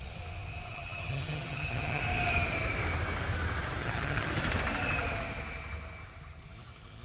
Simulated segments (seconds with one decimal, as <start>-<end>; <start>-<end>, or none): 0.7-2.0; 3.8-4.3